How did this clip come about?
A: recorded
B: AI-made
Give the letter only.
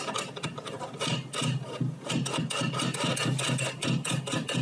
A